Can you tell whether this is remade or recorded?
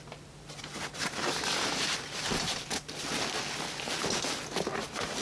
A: recorded